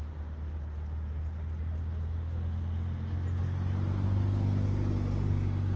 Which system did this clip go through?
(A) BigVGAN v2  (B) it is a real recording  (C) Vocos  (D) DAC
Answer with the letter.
B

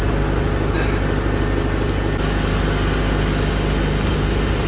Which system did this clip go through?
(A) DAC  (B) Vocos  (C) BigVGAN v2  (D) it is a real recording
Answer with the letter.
D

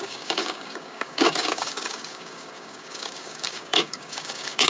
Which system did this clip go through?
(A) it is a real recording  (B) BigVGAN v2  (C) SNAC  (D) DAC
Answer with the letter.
D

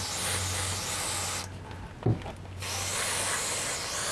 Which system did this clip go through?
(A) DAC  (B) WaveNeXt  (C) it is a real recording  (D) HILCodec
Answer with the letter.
C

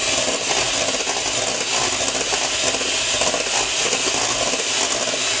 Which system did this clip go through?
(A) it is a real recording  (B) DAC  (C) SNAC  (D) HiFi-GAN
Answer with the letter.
A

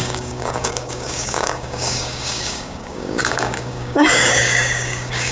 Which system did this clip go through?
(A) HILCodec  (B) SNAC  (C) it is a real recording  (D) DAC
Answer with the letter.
D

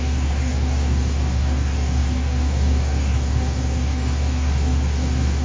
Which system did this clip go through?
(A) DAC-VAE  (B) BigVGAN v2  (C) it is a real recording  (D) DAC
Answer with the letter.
D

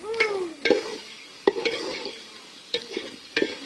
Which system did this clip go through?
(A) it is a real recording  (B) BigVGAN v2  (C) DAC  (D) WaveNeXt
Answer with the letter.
C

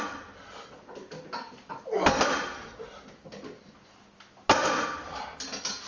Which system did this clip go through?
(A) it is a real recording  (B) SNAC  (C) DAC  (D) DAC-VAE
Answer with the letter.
A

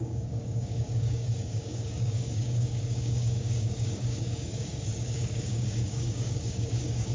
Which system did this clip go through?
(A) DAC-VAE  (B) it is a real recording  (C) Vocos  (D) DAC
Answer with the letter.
D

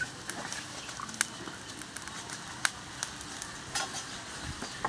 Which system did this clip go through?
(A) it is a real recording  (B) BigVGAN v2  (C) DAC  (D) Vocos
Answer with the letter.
A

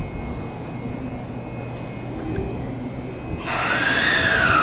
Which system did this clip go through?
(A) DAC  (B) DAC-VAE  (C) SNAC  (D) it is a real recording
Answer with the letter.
D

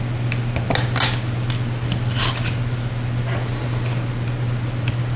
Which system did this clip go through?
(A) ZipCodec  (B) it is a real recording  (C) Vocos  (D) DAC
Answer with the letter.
B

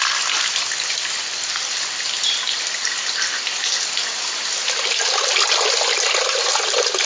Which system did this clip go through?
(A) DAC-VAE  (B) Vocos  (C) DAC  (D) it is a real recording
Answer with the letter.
D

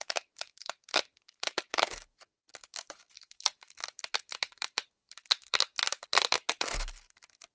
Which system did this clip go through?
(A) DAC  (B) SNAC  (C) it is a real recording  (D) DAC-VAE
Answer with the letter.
A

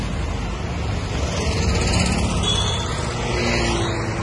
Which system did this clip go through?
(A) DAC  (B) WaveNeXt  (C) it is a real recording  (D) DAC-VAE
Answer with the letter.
C